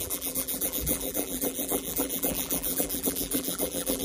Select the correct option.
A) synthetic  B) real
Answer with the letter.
A